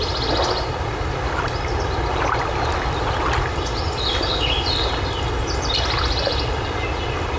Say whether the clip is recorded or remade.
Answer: recorded